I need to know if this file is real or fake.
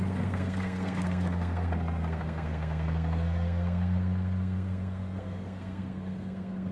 fake